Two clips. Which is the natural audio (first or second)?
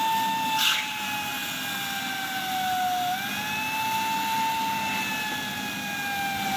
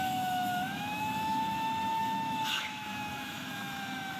first